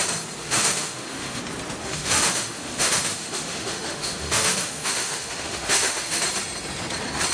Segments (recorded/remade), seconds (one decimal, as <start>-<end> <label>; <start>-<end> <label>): 0.0-0.4 recorded; 0.4-1.4 remade; 1.4-1.8 recorded; 1.8-6.2 remade; 6.2-7.3 recorded